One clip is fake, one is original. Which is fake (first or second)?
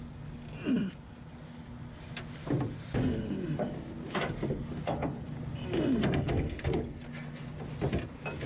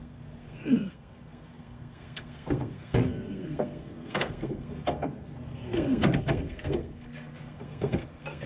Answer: second